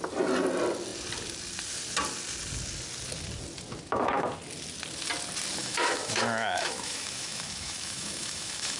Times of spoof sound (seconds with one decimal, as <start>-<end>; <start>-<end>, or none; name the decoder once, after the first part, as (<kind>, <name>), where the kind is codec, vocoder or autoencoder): 5.6-8.8 (autoencoder, DAC-VAE)